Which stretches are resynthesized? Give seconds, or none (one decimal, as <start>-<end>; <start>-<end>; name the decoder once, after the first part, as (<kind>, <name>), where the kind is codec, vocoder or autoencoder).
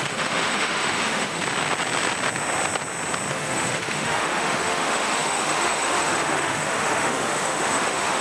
0.0-1.4 (autoencoder, DAC-VAE); 3.3-8.2